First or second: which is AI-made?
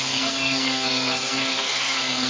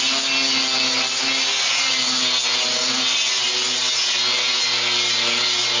first